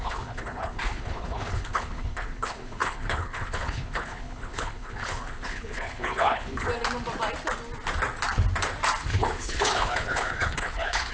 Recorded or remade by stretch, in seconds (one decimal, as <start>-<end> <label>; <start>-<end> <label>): 0.0-6.7 remade; 6.7-9.0 recorded; 9.0-11.1 remade